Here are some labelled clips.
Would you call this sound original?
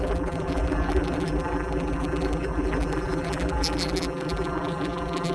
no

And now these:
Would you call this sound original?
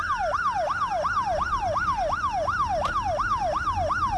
yes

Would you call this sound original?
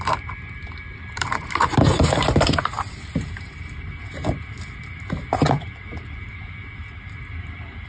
no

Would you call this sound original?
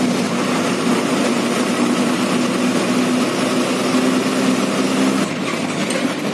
yes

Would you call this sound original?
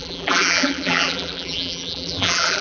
no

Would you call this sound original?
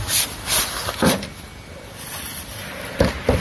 yes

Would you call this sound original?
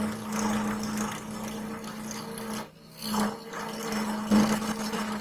yes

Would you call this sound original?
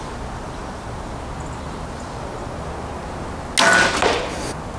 yes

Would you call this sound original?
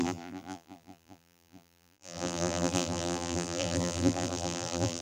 no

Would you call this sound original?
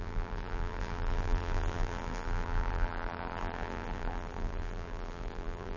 no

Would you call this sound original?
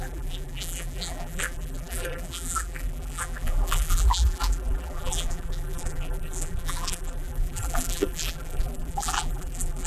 no